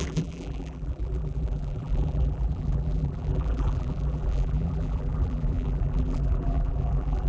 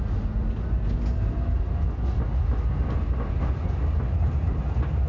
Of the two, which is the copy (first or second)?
first